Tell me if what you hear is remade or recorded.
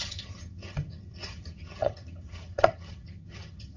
remade